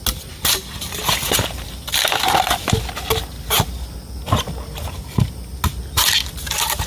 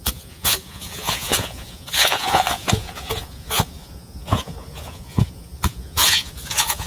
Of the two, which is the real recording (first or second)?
first